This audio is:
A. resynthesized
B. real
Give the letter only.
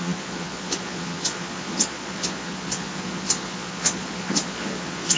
A